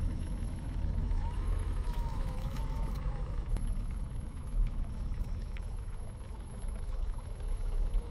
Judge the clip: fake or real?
fake